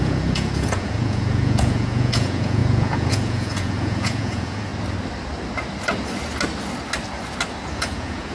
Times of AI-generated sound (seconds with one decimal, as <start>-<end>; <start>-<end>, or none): 0.0-4.7; 7.7-8.3

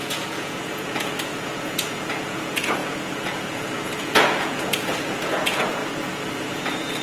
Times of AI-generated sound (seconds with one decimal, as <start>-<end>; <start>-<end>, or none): 0.0-5.8; 6.5-7.0

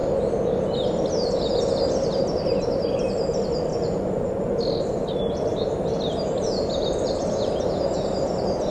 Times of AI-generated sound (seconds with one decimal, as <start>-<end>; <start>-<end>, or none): 3.7-4.6

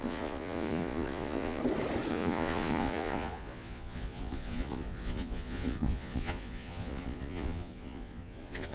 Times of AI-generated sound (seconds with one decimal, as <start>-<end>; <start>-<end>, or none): 0.0-1.6; 2.1-8.7

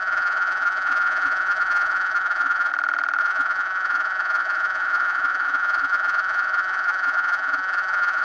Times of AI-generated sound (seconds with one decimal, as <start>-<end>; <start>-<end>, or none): 0.0-2.7; 3.2-8.2

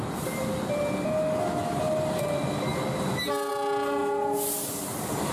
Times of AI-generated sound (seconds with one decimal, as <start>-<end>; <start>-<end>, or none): none

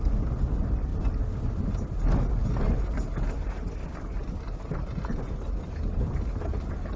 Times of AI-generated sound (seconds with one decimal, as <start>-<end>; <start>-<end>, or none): none